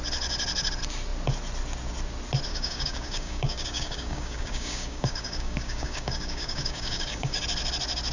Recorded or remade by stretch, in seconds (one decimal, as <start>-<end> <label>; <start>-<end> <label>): 0.0-2.5 recorded; 2.5-7.4 remade; 7.4-8.1 recorded